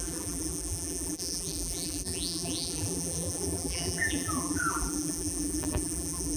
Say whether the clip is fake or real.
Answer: fake